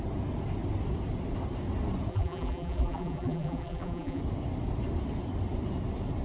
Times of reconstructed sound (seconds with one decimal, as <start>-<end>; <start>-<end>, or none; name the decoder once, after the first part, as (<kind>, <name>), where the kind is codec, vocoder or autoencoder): 2.1-4.2 (vocoder, BigVGAN v2)